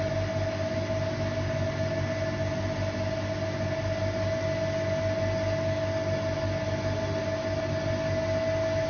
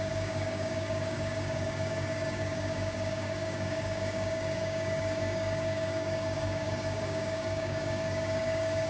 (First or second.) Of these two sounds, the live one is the first